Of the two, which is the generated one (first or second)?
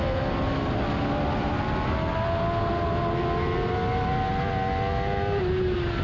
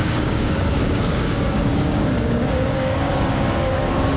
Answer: second